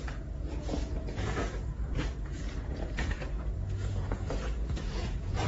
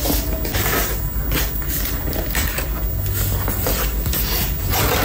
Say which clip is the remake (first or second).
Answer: first